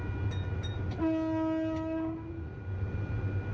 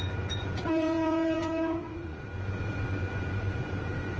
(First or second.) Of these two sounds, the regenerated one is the second